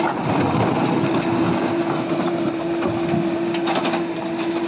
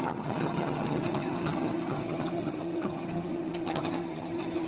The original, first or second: first